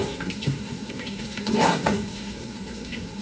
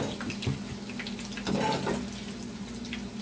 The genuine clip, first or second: second